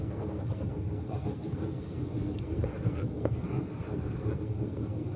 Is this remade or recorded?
remade